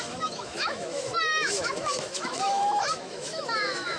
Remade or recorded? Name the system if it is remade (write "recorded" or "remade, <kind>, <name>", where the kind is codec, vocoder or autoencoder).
remade, autoencoder, DAC-VAE